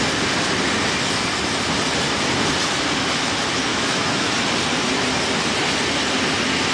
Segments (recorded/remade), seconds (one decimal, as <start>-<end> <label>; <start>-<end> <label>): 0.0-3.7 recorded; 3.7-4.3 remade; 4.3-6.7 recorded